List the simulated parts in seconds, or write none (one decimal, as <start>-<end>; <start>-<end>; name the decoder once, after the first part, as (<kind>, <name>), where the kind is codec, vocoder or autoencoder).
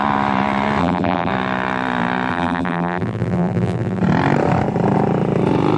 0.8-1.3 (vocoder, BigVGAN v2); 2.3-4.0